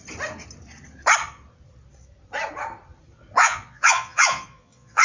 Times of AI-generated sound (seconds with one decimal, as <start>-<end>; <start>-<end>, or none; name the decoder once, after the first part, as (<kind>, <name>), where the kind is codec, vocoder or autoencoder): 3.4-5.0 (vocoder, Vocos)